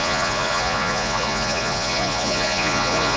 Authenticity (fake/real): fake